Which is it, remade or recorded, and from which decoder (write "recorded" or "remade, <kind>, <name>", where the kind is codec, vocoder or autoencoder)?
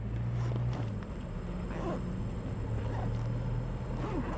recorded